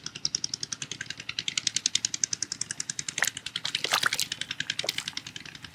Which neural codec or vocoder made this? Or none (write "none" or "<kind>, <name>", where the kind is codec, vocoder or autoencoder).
none